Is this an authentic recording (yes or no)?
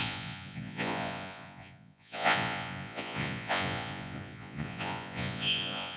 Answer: no